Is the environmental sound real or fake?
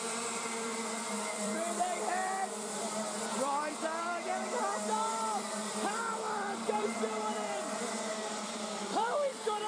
fake